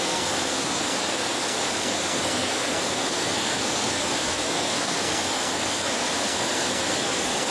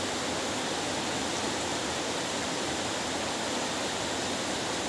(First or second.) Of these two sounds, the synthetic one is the first